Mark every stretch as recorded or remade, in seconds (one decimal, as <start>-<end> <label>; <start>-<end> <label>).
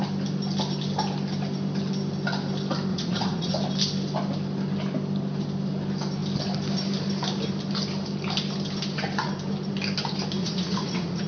0.0-2.9 recorded; 2.9-3.5 remade; 3.5-10.4 recorded; 10.4-11.3 remade